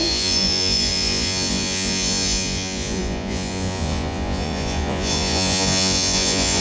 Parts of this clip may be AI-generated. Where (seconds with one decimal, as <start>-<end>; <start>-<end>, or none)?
0.0-6.6